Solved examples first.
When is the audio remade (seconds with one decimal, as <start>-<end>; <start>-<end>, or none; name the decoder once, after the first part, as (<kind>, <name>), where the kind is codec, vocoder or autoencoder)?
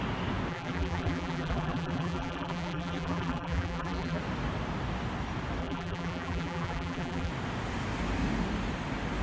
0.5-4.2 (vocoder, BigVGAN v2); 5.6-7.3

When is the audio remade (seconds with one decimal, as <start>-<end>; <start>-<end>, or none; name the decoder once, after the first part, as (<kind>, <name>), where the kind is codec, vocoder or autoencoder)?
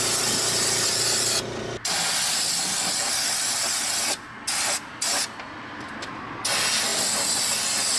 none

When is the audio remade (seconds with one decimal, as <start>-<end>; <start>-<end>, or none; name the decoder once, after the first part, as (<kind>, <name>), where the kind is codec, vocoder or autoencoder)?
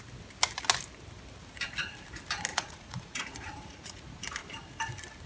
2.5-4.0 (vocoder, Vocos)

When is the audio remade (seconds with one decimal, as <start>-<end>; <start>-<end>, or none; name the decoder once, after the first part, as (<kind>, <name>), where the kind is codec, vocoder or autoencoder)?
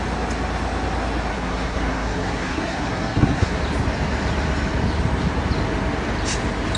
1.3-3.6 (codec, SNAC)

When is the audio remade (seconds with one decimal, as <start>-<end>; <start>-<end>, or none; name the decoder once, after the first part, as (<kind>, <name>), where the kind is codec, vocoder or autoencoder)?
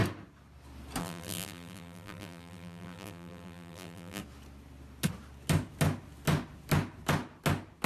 1.0-4.2 (vocoder, BigVGAN v2)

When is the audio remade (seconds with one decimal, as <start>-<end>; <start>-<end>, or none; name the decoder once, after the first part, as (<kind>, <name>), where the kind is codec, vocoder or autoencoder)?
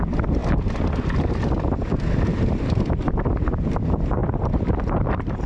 4.2-5.5 (vocoder, BigVGAN v2)